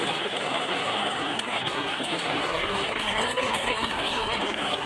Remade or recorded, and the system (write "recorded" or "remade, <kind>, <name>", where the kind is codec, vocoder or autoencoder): remade, codec, SNAC